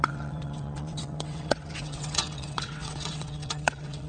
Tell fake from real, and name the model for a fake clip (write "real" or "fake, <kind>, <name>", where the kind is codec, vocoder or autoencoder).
fake, vocoder, WaveNeXt